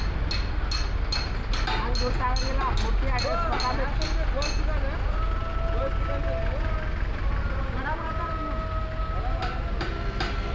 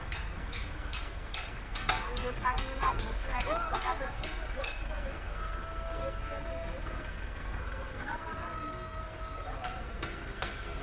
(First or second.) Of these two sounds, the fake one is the second